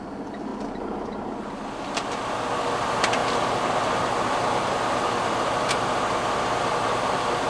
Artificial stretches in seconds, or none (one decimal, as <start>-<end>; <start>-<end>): none